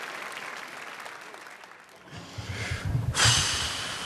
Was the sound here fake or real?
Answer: real